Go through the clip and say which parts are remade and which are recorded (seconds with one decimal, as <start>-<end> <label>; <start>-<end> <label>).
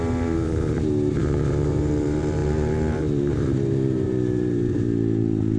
0.0-5.6 remade